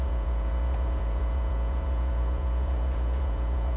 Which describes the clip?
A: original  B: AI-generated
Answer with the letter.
B